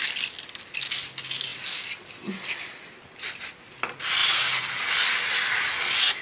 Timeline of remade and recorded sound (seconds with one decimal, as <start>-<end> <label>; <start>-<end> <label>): 0.0-6.2 recorded